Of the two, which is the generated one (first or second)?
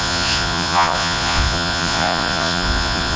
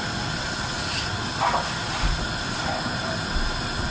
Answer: first